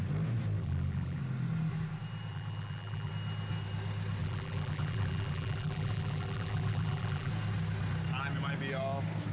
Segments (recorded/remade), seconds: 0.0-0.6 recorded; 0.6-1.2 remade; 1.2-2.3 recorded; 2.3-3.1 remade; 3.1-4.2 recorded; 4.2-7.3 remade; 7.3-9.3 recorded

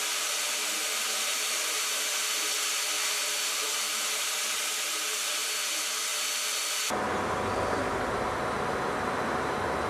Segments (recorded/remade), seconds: 0.0-9.9 recorded

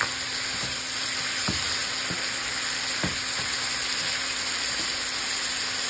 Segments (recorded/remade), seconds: 0.0-5.9 recorded

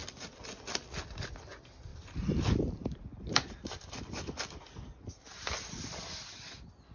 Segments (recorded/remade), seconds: 0.0-0.5 remade; 0.5-1.9 recorded; 1.9-6.0 remade; 6.0-6.9 recorded